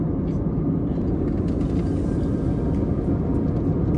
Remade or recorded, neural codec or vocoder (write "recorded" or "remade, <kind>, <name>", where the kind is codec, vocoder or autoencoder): recorded